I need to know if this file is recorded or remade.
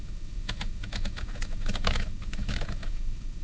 remade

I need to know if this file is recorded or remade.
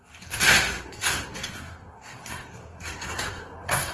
remade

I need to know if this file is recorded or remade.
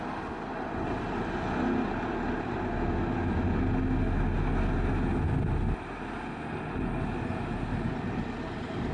recorded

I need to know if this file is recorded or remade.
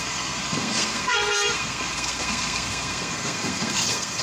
remade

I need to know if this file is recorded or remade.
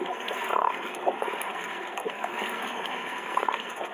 remade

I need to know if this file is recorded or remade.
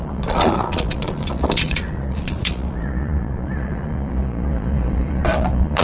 remade